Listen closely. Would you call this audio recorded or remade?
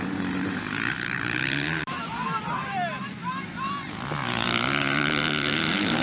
remade